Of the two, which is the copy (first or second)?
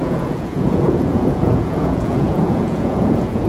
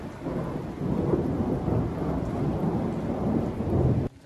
first